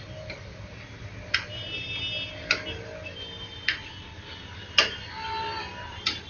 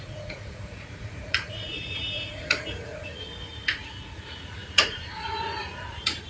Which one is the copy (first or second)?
second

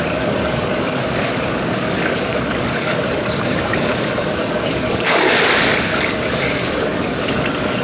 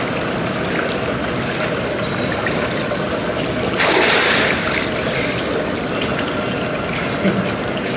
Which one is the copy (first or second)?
first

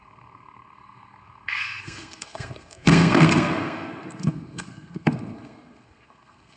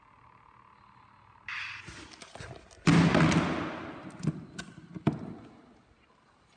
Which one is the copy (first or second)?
first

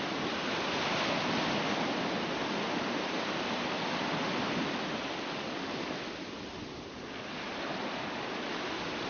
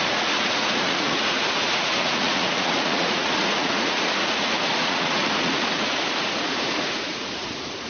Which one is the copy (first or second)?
second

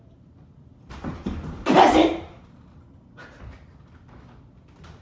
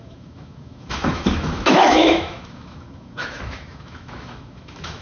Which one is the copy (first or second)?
second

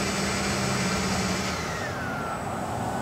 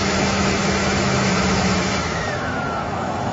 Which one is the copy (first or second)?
second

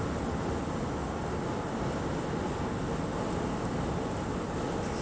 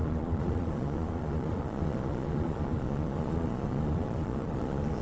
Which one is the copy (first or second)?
second